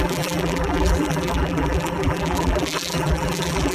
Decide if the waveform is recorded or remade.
remade